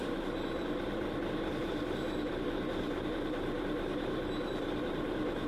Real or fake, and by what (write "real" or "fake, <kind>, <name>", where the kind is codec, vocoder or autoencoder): fake, vocoder, BigVGAN v2